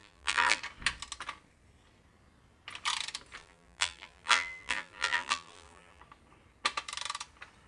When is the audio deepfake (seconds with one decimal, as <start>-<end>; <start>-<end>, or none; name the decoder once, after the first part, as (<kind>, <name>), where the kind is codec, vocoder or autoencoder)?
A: 0.0-0.6 (vocoder, BigVGAN v2); 3.4-6.0